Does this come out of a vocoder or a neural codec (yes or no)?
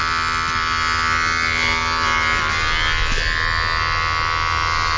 no